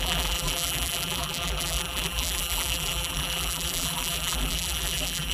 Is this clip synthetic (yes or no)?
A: yes